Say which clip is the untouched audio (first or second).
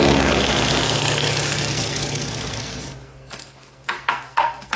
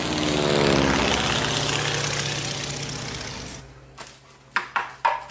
second